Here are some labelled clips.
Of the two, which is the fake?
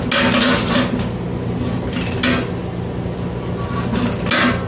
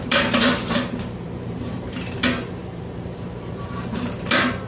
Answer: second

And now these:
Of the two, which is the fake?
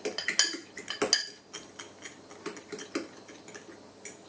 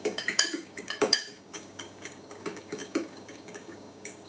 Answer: second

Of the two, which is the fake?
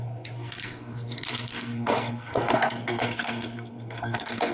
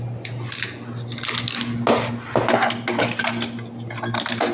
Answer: first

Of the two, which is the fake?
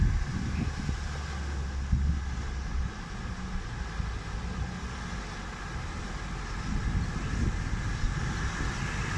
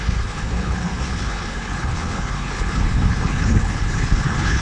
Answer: second